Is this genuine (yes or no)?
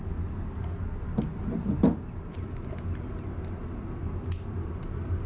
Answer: yes